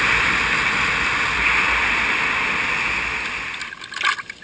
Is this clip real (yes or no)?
yes